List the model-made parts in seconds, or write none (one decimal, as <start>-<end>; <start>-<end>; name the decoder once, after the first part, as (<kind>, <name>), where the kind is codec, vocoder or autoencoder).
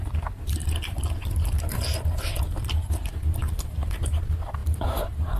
none